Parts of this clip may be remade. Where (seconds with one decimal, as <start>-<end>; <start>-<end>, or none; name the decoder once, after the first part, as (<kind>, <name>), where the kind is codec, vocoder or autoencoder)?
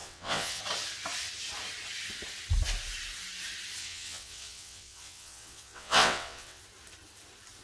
0.0-0.6 (vocoder, WaveNeXt); 3.8-6.6